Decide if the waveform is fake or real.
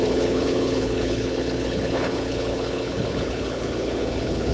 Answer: fake